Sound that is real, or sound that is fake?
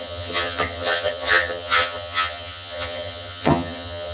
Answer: fake